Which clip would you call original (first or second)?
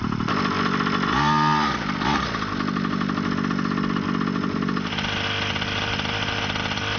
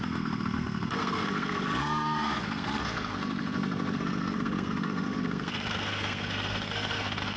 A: first